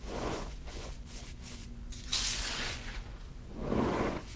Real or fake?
fake